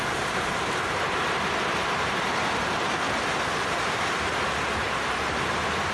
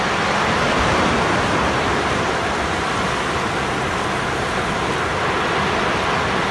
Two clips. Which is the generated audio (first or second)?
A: first